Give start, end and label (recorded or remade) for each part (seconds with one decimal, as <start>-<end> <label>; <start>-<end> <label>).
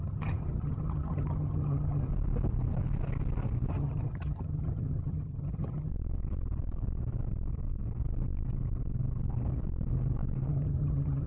0.0-2.1 remade; 2.1-3.7 recorded; 3.7-5.9 remade; 5.9-10.5 recorded; 10.5-11.3 remade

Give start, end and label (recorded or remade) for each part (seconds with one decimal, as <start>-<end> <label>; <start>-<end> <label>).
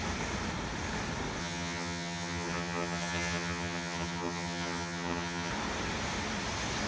0.0-1.4 recorded; 1.4-5.5 remade; 5.5-6.9 recorded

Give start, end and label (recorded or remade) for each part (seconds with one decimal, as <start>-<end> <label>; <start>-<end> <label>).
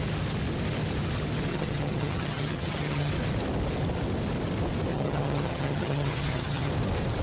0.0-1.5 recorded; 1.5-3.1 remade; 3.1-4.9 recorded; 4.9-6.7 remade; 6.7-7.2 recorded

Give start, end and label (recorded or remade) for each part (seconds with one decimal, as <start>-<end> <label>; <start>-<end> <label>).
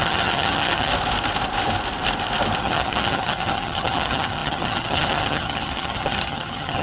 0.0-0.9 remade; 0.9-2.6 recorded; 2.6-6.8 remade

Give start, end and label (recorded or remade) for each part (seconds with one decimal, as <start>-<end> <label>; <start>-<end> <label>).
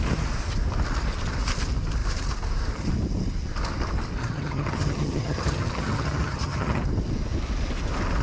0.0-4.2 recorded; 4.2-6.8 remade; 6.8-8.2 recorded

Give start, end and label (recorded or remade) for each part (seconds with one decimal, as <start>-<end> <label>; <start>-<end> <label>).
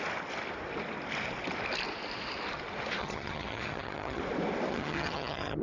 0.0-3.0 recorded; 3.0-4.2 remade; 4.2-4.7 recorded; 4.7-5.6 remade